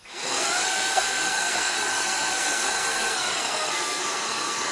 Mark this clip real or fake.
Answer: fake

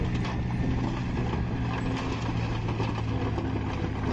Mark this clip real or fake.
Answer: real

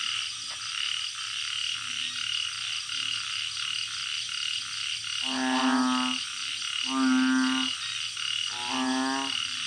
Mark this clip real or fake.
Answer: real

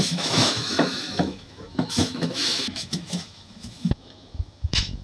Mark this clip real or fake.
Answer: fake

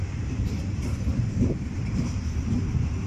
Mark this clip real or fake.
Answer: fake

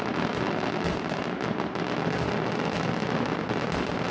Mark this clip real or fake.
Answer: real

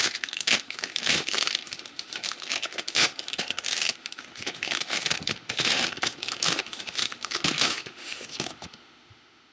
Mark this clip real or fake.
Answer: fake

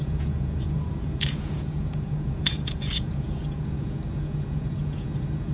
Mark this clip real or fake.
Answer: fake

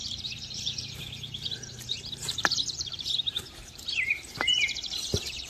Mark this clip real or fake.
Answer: fake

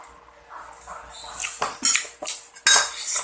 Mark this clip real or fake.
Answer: real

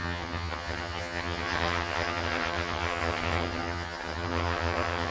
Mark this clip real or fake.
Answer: fake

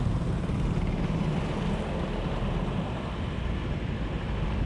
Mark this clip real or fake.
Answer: real